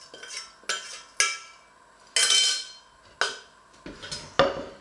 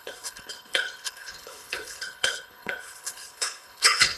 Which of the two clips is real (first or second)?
first